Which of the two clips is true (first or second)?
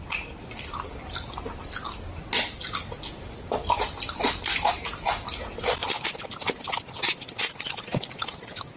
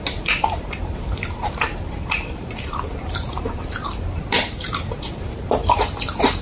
first